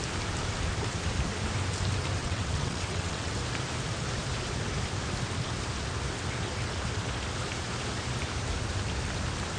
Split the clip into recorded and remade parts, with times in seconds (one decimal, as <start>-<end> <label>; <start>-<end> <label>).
0.0-2.2 recorded; 2.2-3.3 remade; 3.3-9.6 recorded